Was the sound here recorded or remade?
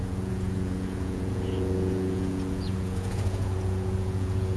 remade